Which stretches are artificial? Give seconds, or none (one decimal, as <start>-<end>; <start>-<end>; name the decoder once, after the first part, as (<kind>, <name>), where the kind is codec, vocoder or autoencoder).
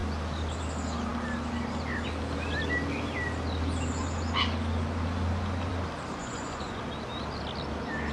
6.2-6.8 (vocoder, Vocos)